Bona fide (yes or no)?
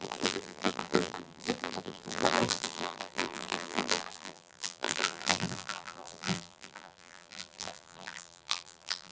no